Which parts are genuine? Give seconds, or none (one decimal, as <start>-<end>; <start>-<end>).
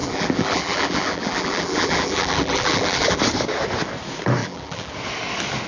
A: 3.2-4.4; 4.9-5.7